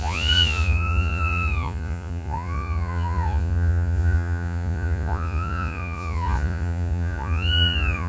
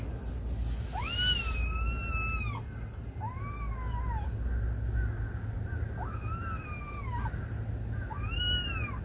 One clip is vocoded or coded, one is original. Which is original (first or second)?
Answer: second